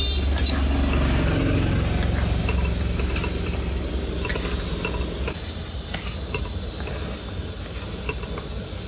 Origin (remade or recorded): recorded